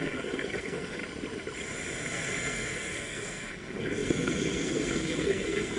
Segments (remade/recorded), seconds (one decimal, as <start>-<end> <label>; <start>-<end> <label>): 0.0-1.0 remade; 1.0-2.1 recorded; 2.1-5.8 remade